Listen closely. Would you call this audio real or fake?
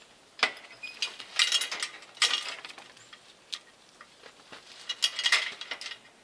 real